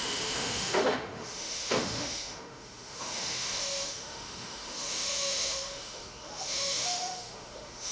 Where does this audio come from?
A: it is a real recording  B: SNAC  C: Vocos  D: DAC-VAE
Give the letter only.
D